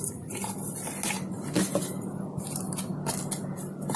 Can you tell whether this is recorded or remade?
recorded